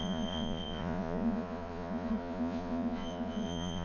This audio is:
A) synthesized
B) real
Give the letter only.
A